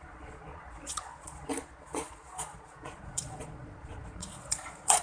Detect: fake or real fake